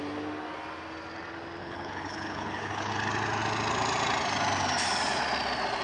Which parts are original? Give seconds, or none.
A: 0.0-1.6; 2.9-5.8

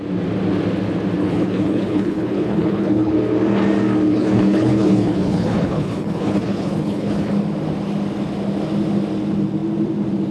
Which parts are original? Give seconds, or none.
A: 0.0-1.2; 3.1-4.1; 7.3-10.3

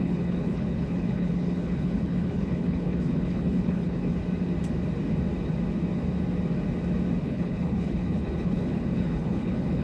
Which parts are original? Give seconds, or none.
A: 4.2-7.2

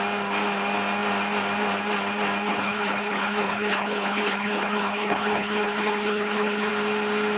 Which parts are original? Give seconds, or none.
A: 0.0-2.5; 6.7-7.4

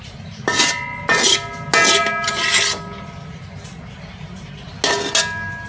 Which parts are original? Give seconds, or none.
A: 0.0-5.7